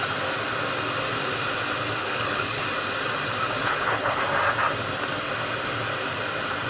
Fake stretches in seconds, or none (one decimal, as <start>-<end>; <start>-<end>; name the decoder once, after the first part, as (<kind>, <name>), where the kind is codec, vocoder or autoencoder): 2.0-2.6 (codec, HILCodec); 3.6-4.2